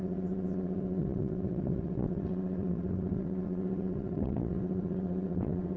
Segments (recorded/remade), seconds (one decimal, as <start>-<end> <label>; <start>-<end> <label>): 0.0-5.8 remade